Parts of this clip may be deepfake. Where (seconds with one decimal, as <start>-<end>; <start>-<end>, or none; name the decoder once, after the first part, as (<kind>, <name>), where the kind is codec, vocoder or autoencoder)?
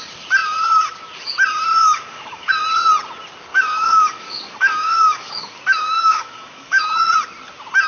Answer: 1.8-2.5 (codec, DAC); 3.5-6.8